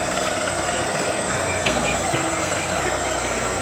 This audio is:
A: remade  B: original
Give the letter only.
A